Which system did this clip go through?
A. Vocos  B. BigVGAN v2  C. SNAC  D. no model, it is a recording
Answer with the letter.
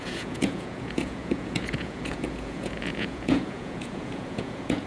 A